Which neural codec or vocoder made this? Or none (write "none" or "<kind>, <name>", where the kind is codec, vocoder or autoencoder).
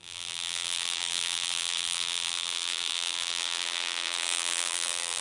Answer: vocoder, BigVGAN v2